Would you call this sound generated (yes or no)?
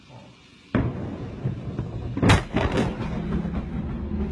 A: no